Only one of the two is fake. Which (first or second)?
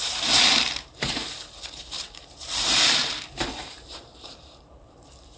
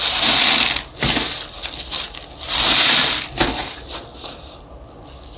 first